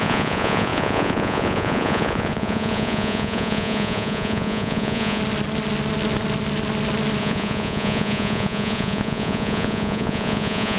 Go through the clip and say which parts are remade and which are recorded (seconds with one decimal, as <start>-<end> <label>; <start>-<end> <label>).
0.0-5.2 remade; 5.2-7.2 recorded; 7.2-10.8 remade